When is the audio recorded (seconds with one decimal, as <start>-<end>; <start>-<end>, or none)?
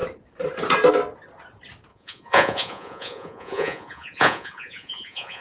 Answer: 0.0-1.9